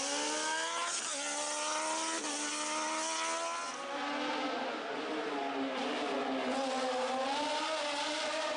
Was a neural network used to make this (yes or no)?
no